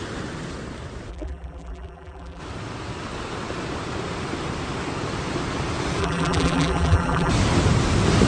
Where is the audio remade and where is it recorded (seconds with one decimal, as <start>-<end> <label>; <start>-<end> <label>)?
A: 0.0-1.1 recorded; 1.1-2.4 remade; 2.4-6.0 recorded; 6.0-7.3 remade; 7.3-8.3 recorded